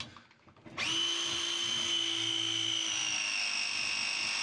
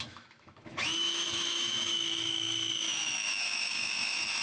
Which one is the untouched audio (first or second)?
first